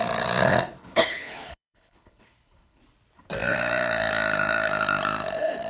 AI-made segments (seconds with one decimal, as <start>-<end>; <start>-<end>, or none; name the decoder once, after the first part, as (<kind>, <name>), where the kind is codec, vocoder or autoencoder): 0.8-2.8 (codec, HILCodec)